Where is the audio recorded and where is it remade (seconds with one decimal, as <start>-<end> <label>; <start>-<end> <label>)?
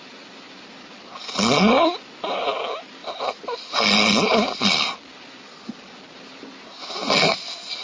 0.0-7.8 recorded